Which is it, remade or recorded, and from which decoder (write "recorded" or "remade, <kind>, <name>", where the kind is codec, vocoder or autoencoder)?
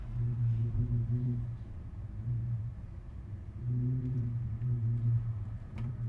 remade, vocoder, BigVGAN v2